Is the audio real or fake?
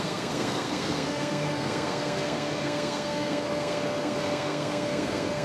fake